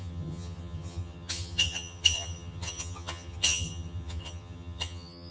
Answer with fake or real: fake